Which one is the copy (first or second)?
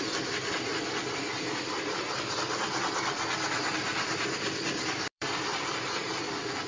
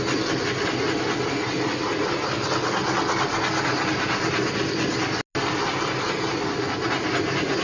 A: first